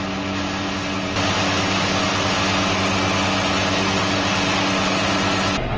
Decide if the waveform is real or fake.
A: real